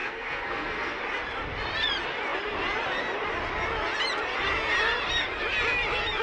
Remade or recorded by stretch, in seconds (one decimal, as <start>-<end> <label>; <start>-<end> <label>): 0.0-1.0 remade; 1.0-6.2 recorded